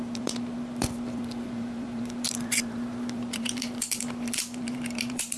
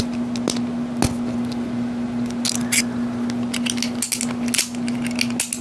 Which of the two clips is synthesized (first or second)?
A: first